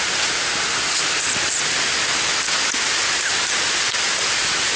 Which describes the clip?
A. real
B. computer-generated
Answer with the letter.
A